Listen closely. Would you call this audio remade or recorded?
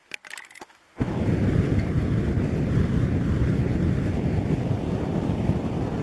recorded